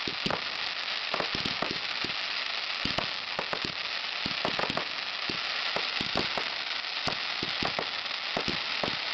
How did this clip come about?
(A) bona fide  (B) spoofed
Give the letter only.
A